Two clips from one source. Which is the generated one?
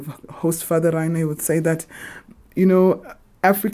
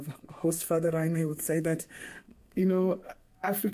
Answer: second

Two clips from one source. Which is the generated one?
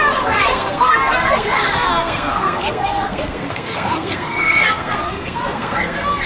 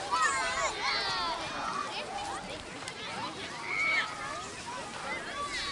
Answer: first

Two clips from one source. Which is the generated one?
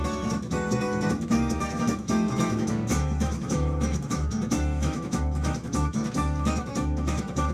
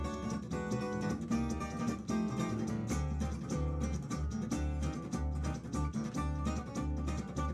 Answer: first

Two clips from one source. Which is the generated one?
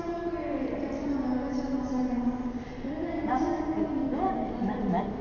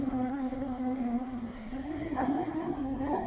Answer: second